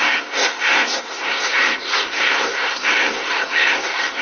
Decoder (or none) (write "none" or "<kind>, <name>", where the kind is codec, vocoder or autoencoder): codec, SNAC